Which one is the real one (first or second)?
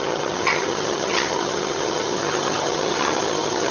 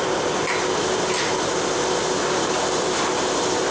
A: second